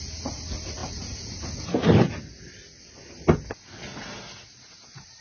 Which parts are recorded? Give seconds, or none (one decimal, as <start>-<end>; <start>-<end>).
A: 0.0-0.8; 1.3-4.0